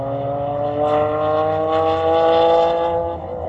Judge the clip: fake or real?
real